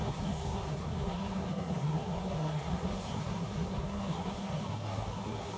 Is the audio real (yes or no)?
no